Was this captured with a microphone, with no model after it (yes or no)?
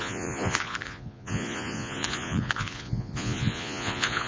no